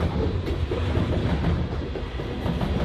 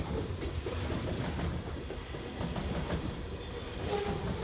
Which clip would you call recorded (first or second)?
first